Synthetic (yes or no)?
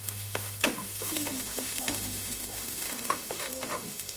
yes